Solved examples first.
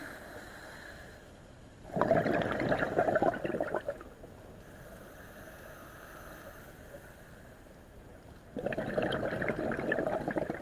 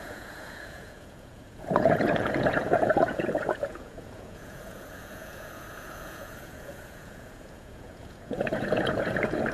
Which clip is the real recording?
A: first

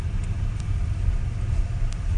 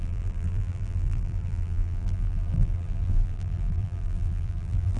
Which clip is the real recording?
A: first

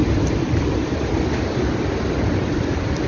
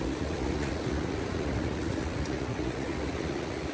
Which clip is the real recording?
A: first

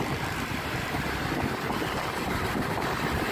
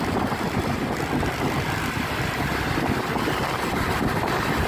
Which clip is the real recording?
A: second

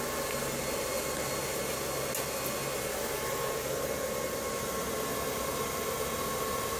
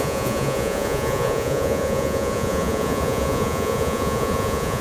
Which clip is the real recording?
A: first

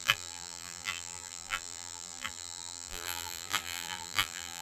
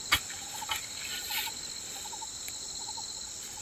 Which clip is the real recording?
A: second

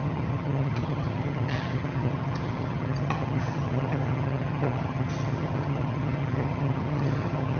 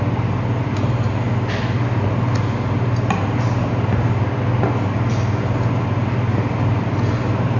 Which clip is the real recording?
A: second